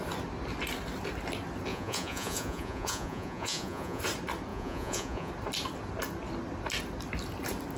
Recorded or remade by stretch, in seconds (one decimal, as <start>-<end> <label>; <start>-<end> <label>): 0.0-1.7 recorded; 1.7-4.0 remade; 4.0-4.5 recorded; 4.5-5.3 remade; 5.3-7.8 recorded